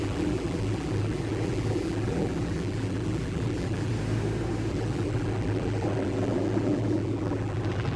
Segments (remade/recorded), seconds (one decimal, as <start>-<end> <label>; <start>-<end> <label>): 0.0-3.9 remade; 3.9-4.7 recorded; 4.7-8.0 remade